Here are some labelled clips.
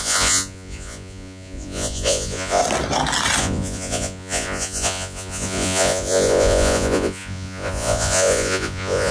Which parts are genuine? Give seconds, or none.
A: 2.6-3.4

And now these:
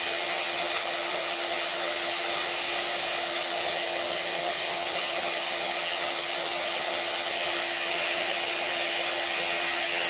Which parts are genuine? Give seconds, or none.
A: 2.5-3.2

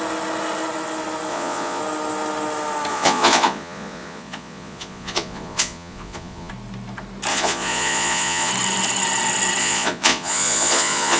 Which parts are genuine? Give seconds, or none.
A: 0.0-1.3; 1.8-2.9; 6.5-7.3; 8.5-9.6

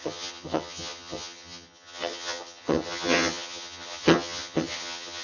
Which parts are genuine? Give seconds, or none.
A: none

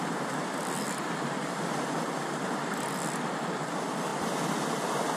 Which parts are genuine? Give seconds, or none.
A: 0.0-5.2